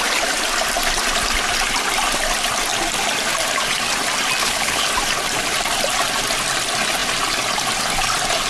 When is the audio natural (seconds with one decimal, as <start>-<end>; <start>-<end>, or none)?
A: 0.0-4.4; 4.9-8.5